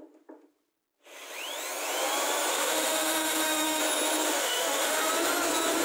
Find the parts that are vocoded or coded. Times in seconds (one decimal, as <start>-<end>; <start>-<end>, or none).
2.5-3.8; 4.4-5.1